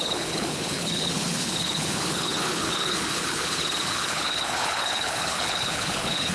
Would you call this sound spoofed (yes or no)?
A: yes